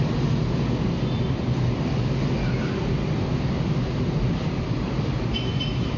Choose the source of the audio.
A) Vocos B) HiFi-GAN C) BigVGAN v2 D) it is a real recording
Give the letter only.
D